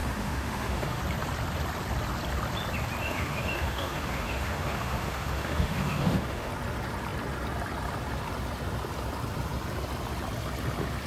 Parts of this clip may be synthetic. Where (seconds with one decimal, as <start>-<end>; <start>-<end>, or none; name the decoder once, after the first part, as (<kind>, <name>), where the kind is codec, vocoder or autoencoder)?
0.0-1.0 (autoencoder, DAC-VAE); 3.0-6.5

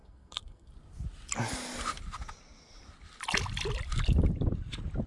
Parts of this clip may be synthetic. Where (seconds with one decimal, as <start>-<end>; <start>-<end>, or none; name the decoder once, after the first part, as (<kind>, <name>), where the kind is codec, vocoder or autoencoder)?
0.0-0.7 (codec, SNAC)

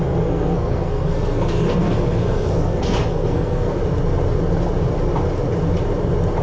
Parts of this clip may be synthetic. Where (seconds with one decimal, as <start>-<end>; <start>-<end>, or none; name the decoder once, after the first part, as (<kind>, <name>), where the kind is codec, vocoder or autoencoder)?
0.0-3.8 (codec, SNAC)

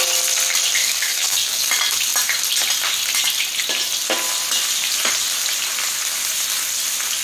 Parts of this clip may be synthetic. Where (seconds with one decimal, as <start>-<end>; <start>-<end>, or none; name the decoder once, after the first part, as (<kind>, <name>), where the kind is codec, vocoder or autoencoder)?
0.8-1.7 (codec, DAC)

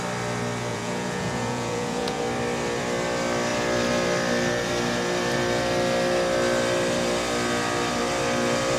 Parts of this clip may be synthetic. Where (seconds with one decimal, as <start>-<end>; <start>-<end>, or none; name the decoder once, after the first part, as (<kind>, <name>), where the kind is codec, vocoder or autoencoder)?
0.7-2.2 (vocoder, Vocos)

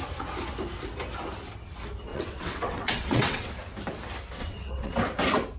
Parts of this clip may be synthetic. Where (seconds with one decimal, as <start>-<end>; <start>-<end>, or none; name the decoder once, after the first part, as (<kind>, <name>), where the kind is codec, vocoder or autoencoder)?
2.1-3.5 (vocoder, WaveNeXt); 4.4-5.0